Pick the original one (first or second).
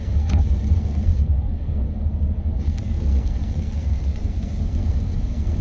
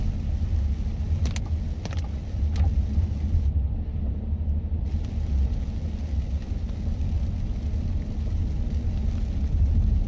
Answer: second